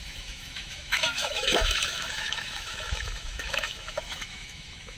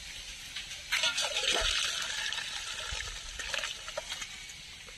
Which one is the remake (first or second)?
first